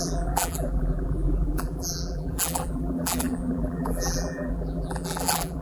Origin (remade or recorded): remade